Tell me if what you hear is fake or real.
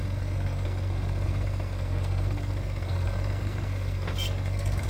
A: fake